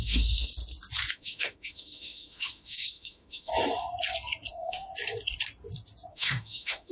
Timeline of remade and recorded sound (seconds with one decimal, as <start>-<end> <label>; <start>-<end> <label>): 0.0-0.5 remade; 0.5-1.1 recorded; 1.1-3.5 remade; 3.5-4.5 recorded; 4.5-4.9 remade; 4.9-6.1 recorded; 6.1-6.9 remade